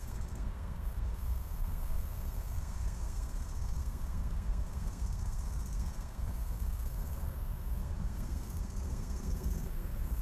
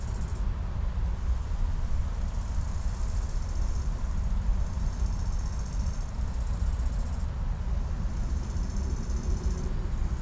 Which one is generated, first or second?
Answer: first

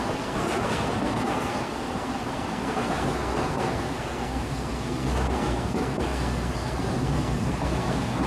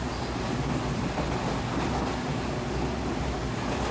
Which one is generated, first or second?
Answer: first